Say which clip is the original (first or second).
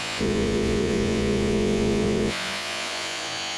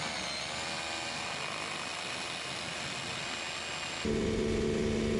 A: second